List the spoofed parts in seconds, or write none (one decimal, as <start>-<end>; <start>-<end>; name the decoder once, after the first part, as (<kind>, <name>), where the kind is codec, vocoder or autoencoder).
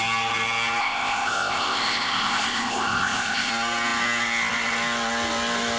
0.8-3.5 (codec, ZipCodec)